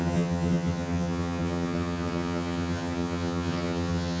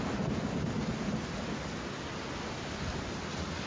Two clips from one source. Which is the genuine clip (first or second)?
second